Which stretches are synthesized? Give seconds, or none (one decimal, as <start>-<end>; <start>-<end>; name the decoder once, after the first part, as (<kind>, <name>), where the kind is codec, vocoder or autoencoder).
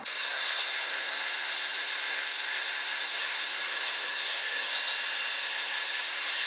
0.0-4.7 (codec, SNAC); 5.4-6.5